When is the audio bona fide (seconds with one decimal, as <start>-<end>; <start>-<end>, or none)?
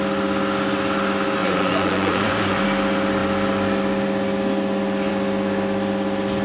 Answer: 0.0-1.4; 2.6-6.4